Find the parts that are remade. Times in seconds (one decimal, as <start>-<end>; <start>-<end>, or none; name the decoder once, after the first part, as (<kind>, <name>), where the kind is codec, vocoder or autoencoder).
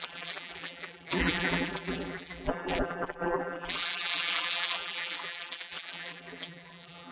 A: 0.0-7.1 (vocoder, BigVGAN v2)